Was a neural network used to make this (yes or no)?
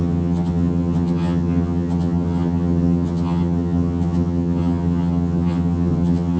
yes